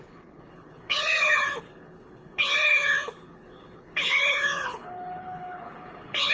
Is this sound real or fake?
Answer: fake